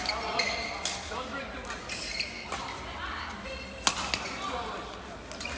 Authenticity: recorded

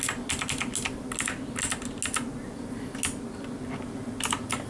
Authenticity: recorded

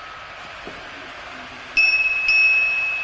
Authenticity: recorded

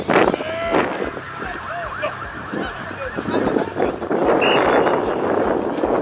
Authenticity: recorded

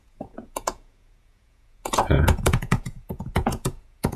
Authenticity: remade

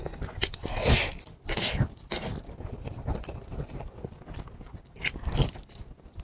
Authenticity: recorded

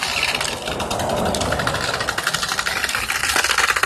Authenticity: recorded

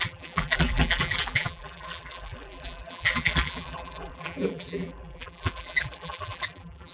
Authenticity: remade